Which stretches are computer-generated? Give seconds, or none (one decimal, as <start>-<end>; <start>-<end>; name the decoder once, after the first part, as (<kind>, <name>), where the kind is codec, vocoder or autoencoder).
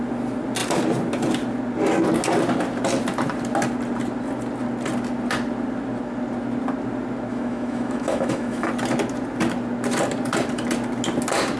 7.3-8.7 (autoencoder, DAC-VAE)